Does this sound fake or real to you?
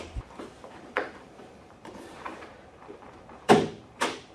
fake